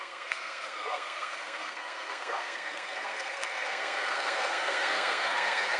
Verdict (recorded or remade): remade